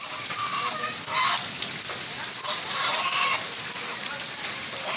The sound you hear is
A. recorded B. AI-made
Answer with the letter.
B